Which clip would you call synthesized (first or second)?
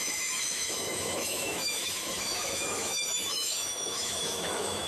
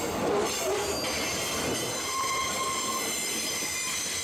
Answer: first